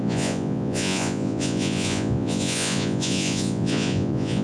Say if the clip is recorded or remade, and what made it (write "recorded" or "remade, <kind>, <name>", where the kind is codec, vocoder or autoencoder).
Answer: remade, vocoder, Vocos